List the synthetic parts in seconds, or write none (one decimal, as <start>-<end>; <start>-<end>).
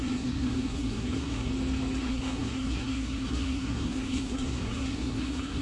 0.0-1.5; 2.0-5.6